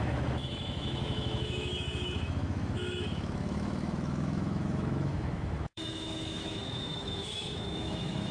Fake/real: fake